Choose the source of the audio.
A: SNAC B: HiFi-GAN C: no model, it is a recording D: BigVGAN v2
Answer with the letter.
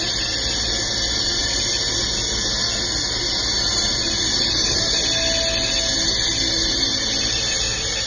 C